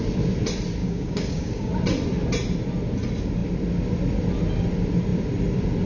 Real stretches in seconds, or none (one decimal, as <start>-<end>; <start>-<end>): 0.0-0.8; 1.7-5.9